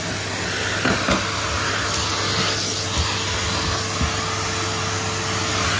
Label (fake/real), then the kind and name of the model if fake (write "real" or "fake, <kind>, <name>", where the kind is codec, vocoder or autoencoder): real